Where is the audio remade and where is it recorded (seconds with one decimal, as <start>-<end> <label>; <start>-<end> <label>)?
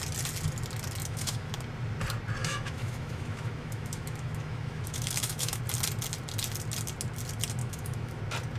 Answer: 0.0-1.0 recorded; 1.0-1.5 remade; 1.5-2.4 recorded; 2.4-5.6 remade; 5.6-7.6 recorded; 7.6-8.2 remade; 8.2-8.6 recorded